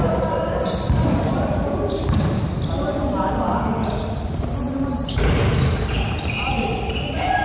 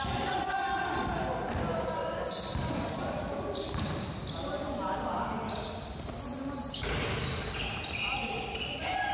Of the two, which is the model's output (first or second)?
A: first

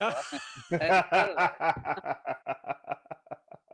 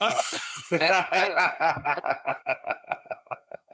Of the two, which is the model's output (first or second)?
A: second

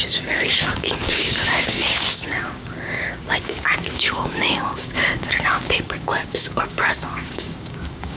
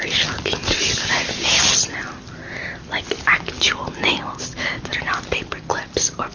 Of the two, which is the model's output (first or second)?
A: first